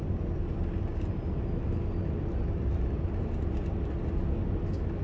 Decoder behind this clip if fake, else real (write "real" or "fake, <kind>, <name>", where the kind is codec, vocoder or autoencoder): real